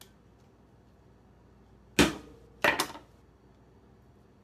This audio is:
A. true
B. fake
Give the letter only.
A